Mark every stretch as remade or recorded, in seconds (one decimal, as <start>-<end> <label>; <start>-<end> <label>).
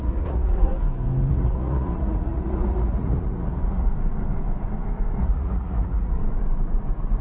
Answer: 0.0-0.7 remade; 0.7-1.3 recorded; 1.3-3.9 remade; 3.9-5.2 recorded; 5.2-6.2 remade; 6.2-7.2 recorded